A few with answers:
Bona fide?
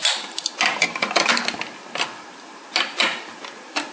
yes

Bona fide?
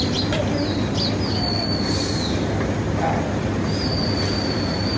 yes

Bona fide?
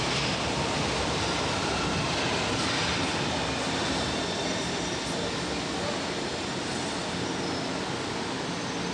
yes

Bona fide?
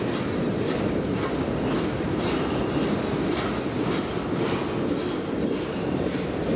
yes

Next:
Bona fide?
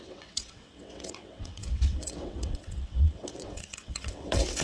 no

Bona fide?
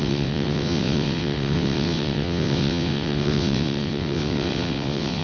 no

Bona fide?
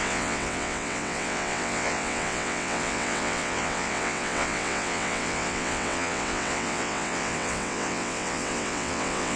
no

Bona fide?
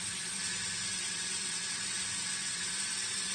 no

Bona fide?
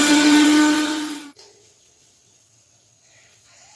no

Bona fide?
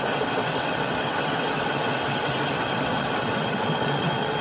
no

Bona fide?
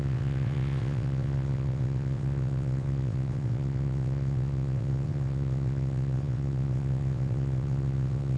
no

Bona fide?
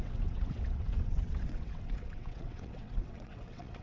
no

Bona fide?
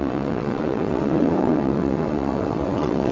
no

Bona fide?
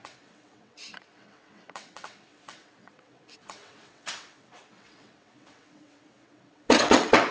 no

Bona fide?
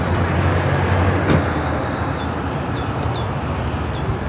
yes